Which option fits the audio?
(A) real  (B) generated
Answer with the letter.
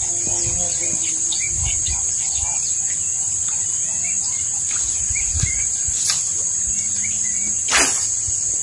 A